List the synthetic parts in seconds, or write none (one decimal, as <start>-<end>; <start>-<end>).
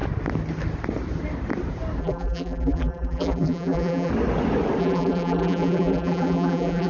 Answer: 2.0-4.1; 4.8-6.9